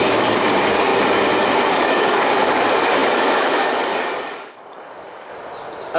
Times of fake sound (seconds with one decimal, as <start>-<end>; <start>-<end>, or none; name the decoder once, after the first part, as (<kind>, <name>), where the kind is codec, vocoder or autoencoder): 0.0-0.9 (codec, DAC); 1.7-5.3